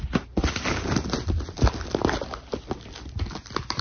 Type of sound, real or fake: real